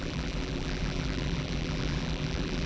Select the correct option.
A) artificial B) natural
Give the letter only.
A